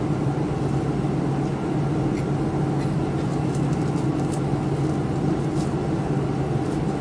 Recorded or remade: recorded